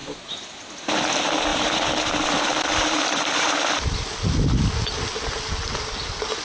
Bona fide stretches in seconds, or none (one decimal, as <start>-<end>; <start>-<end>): 0.0-6.4